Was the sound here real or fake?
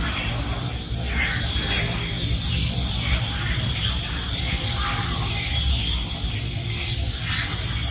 real